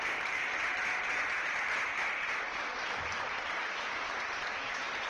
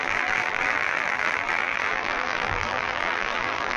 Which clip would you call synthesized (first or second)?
second